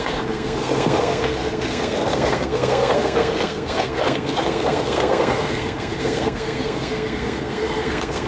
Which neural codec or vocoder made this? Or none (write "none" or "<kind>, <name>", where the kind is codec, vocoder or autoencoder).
codec, SNAC